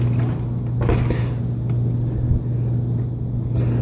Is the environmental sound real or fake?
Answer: real